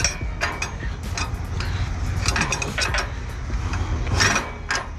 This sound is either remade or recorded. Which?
recorded